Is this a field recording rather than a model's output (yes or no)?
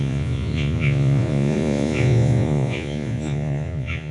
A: no